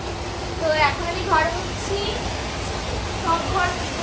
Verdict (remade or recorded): recorded